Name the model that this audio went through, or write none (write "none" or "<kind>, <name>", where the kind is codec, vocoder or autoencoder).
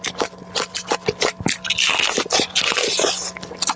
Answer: none